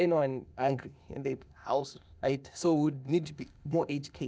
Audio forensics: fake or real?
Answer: fake